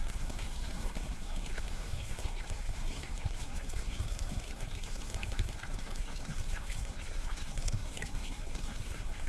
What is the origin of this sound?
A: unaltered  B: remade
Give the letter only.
B